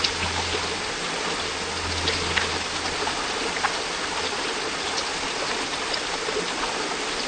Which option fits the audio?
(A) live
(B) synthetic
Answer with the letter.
A